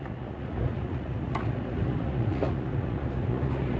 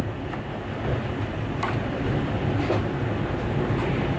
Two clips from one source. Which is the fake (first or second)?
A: first